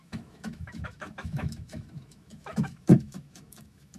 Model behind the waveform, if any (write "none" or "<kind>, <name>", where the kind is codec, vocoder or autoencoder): autoencoder, DAC-VAE